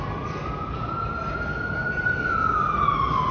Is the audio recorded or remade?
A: recorded